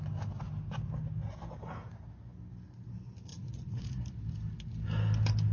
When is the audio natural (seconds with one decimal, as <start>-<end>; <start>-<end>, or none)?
0.0-3.3; 3.9-5.5